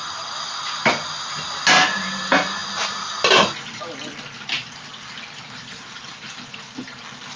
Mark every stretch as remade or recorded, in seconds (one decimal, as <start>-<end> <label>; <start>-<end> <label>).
0.0-7.4 recorded